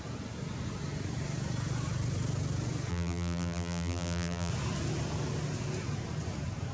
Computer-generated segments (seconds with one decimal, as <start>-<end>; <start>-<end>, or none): 2.9-4.5